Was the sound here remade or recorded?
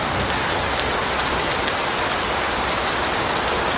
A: recorded